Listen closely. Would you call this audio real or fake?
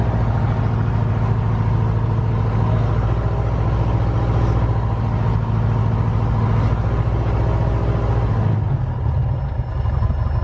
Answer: real